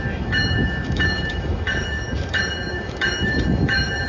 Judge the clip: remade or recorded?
remade